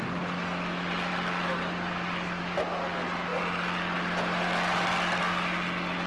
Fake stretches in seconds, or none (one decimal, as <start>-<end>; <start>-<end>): none

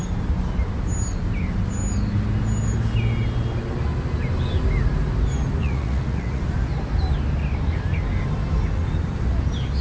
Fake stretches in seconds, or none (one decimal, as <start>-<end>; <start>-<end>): 5.6-6.4